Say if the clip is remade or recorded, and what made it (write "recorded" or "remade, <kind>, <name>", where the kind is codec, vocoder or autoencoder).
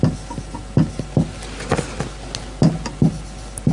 recorded